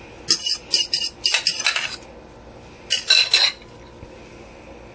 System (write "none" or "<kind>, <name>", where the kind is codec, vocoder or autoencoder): none